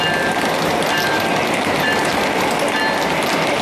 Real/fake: real